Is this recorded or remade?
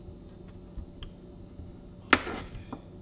recorded